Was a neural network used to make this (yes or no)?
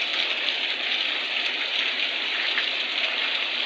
no